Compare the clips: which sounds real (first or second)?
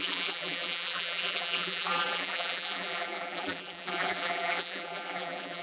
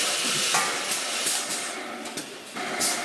second